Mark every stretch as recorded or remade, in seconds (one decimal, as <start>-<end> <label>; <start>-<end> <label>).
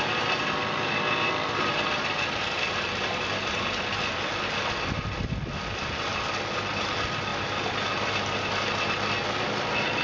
0.0-10.0 recorded